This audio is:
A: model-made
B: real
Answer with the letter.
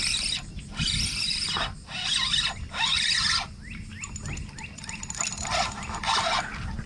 B